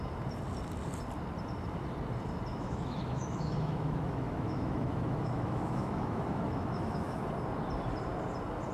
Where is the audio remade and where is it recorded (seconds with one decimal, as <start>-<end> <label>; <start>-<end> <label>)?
0.0-2.5 recorded; 2.5-7.2 remade; 7.2-8.7 recorded